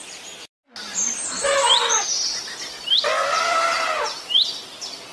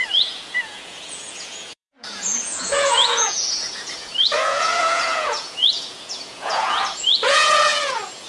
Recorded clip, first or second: first